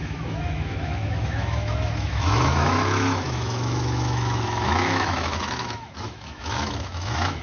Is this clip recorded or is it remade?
remade